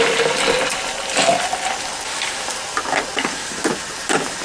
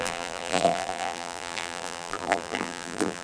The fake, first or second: second